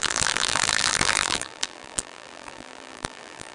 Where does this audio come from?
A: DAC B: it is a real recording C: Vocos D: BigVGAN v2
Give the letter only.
D